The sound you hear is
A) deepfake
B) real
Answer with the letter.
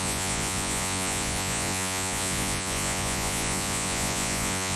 A